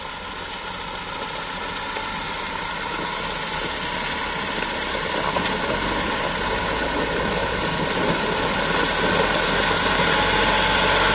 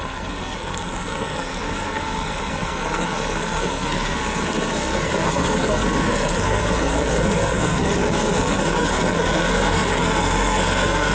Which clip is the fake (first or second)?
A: second